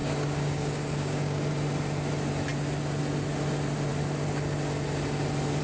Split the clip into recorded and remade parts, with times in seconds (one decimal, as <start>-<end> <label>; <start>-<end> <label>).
0.0-1.5 remade; 1.5-5.6 recorded